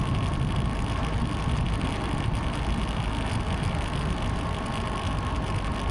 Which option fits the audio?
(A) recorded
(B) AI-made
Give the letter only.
A